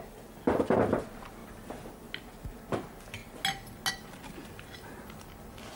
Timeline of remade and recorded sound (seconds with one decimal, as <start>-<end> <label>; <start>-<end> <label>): 0.0-1.4 recorded; 1.4-2.0 remade; 2.0-5.8 recorded